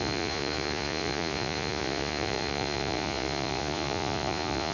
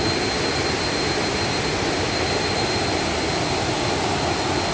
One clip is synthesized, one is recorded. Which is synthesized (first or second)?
first